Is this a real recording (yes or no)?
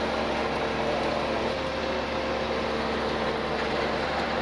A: yes